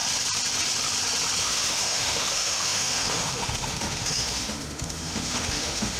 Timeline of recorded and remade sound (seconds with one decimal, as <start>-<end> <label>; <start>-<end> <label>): 0.0-1.4 recorded; 1.4-6.0 remade